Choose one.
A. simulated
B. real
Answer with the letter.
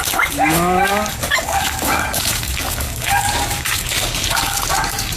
A